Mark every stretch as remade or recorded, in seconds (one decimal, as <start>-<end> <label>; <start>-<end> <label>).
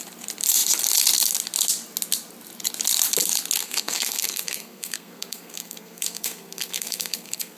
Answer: 0.0-3.6 recorded; 3.6-7.6 remade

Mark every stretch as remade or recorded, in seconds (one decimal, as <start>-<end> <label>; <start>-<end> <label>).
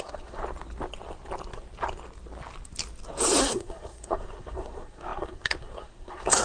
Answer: 0.0-0.4 remade; 0.4-3.4 recorded; 3.4-6.4 remade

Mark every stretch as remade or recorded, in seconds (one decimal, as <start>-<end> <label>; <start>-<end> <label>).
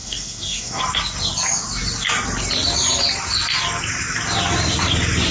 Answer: 0.0-0.8 remade; 0.8-5.3 recorded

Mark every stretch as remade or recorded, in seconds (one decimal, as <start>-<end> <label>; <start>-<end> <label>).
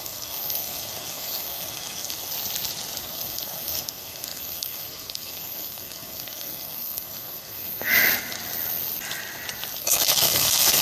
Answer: 0.0-2.3 remade; 2.3-3.0 recorded; 3.0-7.9 remade; 7.9-9.8 recorded; 9.8-10.8 remade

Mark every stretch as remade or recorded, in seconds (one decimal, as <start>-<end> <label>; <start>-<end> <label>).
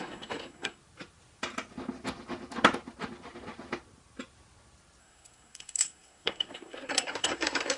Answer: 0.0-0.8 remade; 0.8-5.0 recorded; 5.0-7.8 remade